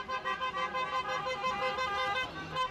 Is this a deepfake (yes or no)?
no